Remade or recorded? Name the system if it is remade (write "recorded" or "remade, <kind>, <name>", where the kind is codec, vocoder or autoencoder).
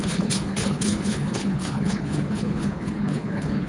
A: remade, codec, HILCodec